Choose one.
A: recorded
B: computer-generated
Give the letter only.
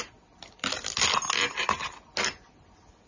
A